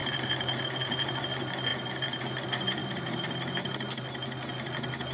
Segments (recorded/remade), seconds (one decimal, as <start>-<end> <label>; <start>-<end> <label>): 0.0-1.2 remade; 1.2-1.7 recorded; 1.7-2.2 remade; 2.2-2.8 recorded; 2.8-3.7 remade; 3.7-5.1 recorded